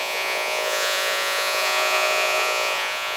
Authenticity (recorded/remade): remade